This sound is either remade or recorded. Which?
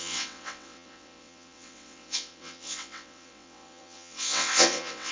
remade